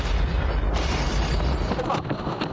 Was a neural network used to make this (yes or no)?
no